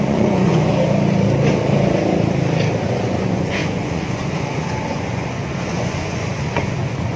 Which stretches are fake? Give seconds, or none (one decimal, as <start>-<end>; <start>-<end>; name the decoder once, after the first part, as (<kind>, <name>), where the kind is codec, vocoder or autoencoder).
0.0-0.7 (vocoder, Vocos); 2.8-7.2